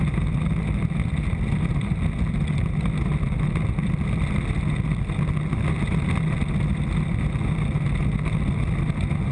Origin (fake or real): real